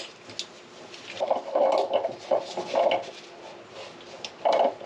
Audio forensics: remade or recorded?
recorded